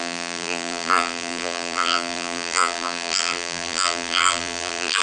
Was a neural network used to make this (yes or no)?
yes